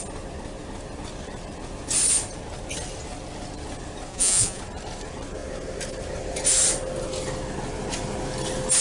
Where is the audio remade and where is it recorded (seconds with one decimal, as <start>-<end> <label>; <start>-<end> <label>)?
0.0-4.1 recorded; 4.1-4.6 remade; 4.6-8.8 recorded